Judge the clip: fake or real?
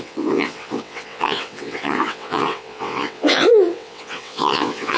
fake